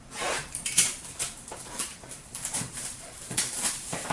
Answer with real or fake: fake